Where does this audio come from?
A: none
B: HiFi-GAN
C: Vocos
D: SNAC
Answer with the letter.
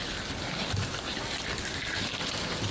A